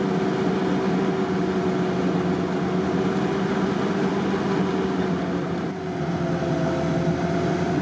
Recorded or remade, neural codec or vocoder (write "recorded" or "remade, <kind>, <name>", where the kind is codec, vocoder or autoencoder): recorded